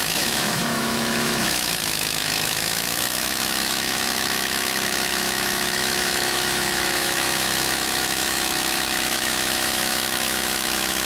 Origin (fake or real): fake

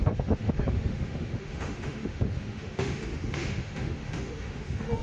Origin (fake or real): fake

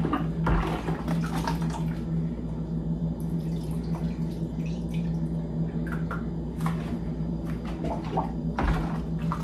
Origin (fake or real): real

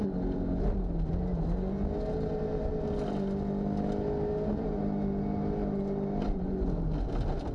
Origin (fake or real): real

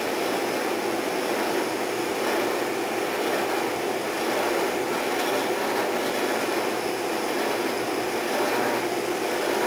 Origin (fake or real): real